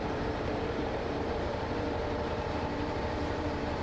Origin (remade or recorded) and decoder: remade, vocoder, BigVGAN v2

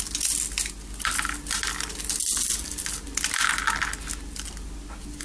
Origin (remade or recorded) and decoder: recorded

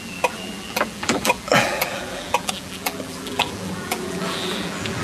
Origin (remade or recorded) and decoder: remade, vocoder, BigVGAN v2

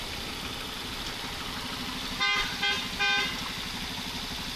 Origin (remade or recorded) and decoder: recorded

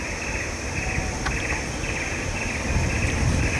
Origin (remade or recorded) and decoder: recorded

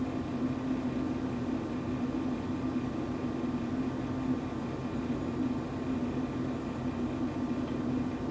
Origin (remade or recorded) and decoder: recorded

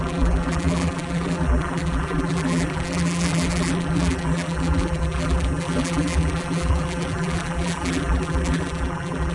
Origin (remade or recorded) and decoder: remade, vocoder, BigVGAN v2